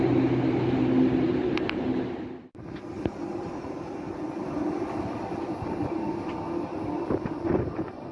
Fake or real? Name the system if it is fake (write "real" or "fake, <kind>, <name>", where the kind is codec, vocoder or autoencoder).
real